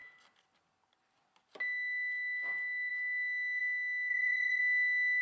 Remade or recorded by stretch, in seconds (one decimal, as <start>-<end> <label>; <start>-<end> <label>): 0.0-4.1 recorded; 4.1-4.6 remade; 4.6-5.2 recorded